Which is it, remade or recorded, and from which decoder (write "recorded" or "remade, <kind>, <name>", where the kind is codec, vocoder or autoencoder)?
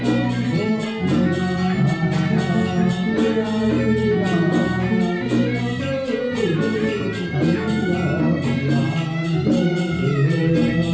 recorded